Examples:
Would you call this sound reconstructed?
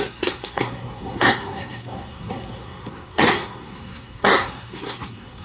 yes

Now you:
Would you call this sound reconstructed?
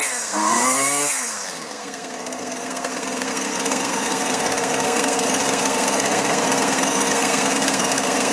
yes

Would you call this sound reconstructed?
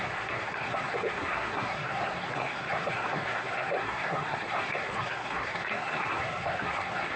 yes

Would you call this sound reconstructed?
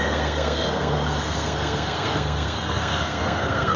yes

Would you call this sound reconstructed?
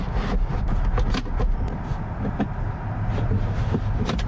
no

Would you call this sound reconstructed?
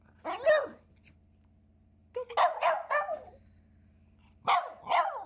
no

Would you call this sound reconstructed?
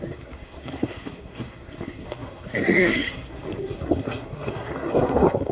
yes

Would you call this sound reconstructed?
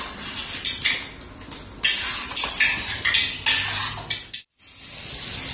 no